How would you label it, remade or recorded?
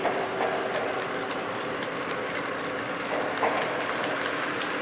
recorded